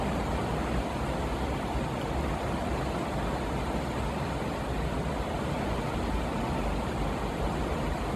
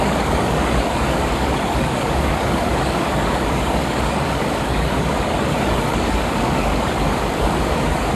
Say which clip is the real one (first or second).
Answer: first